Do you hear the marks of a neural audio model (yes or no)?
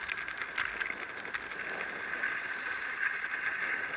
no